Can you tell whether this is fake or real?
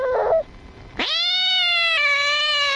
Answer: real